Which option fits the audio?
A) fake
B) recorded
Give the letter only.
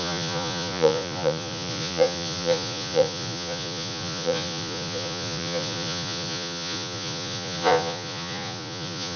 A